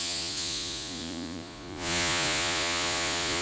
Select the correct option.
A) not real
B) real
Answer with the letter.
A